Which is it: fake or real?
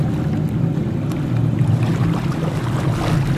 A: real